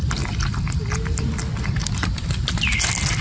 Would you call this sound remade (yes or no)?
no